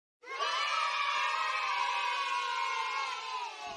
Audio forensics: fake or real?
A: real